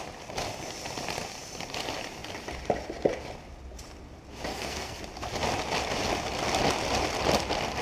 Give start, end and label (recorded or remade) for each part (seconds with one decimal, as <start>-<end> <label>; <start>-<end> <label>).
0.0-4.5 recorded; 4.5-5.0 remade; 5.0-7.8 recorded

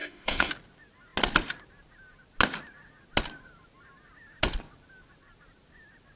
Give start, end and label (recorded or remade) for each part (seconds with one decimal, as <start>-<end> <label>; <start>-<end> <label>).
0.0-0.5 remade; 0.5-6.2 recorded